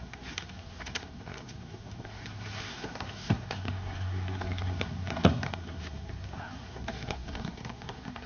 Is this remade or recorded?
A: remade